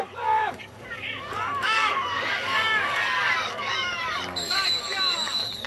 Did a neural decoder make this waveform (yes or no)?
yes